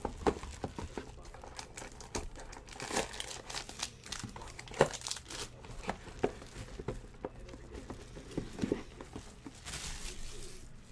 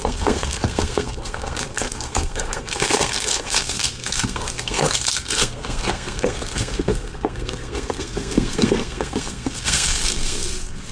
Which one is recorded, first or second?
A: first